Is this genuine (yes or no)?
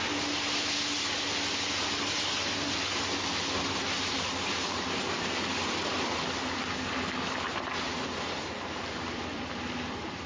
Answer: yes